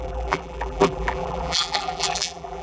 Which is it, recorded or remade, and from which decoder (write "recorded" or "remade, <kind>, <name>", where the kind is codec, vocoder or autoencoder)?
remade, vocoder, BigVGAN v2